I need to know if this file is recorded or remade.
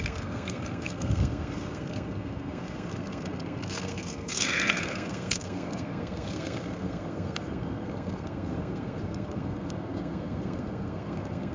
remade